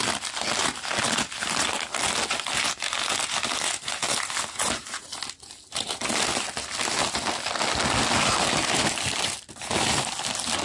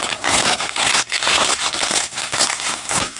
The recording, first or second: first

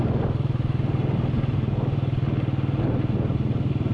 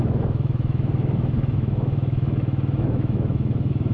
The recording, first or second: first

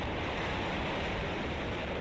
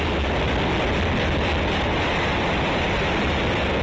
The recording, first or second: second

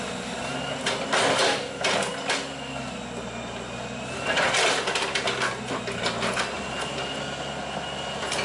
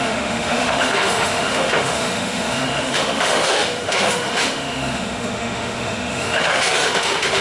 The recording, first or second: first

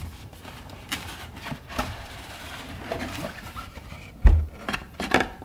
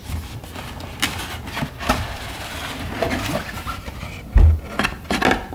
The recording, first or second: second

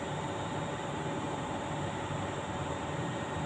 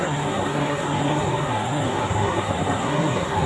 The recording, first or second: first